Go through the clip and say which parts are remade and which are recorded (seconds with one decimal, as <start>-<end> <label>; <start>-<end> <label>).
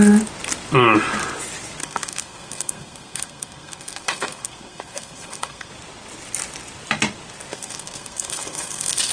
0.0-1.8 recorded; 1.8-5.7 remade; 5.7-7.5 recorded; 7.5-9.1 remade